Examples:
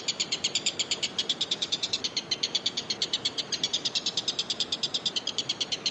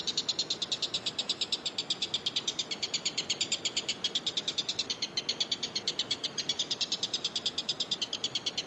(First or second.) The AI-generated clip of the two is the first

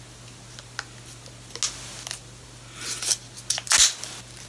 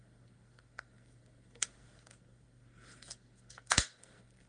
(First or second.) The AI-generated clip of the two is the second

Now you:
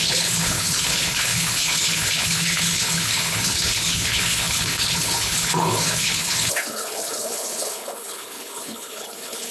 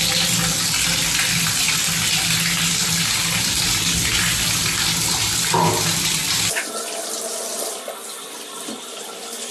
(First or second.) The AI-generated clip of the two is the first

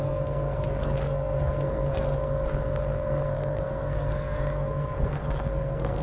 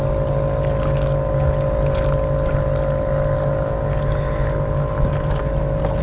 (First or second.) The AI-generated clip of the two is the first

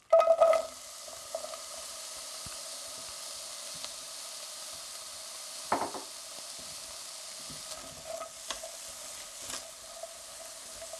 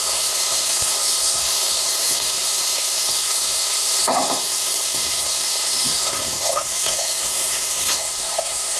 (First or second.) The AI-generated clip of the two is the second